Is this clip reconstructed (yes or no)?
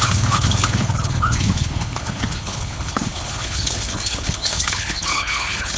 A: yes